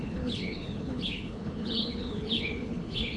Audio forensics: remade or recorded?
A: remade